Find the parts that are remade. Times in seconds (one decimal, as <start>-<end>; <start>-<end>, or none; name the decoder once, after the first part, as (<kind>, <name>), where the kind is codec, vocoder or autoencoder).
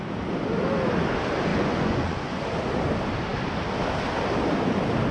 1.5-2.4 (vocoder, Vocos)